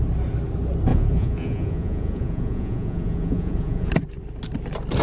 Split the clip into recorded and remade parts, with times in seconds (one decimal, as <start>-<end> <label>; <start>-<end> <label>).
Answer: 0.0-0.9 recorded; 0.9-3.9 remade; 3.9-5.0 recorded